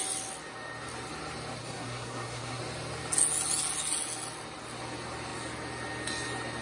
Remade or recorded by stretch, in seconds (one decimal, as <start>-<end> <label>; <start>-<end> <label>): 0.0-1.6 recorded; 1.6-2.6 remade; 2.6-6.6 recorded